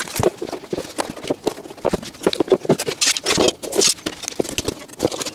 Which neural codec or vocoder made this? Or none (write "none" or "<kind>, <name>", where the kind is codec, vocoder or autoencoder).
none